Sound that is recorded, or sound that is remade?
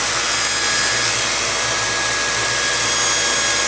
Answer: recorded